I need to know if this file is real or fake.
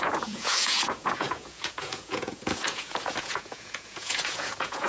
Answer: fake